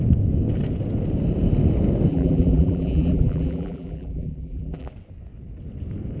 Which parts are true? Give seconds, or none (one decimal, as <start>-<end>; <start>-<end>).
0.0-2.1; 4.9-6.2